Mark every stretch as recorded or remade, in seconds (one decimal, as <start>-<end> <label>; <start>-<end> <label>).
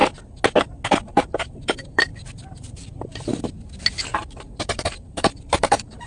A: 0.0-0.9 recorded; 0.9-2.1 remade; 2.1-4.6 recorded; 4.6-6.1 remade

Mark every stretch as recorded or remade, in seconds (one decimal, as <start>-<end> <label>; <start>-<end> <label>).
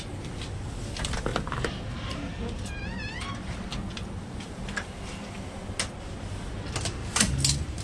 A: 0.0-7.8 recorded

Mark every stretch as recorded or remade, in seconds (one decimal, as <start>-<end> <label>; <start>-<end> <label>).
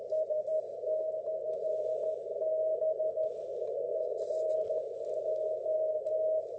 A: 0.0-6.6 recorded